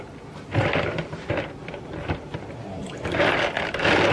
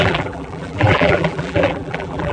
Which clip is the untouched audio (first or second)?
first